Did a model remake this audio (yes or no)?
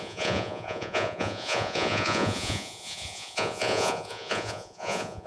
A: yes